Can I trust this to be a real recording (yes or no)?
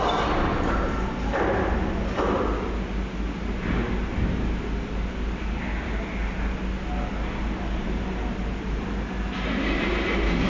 yes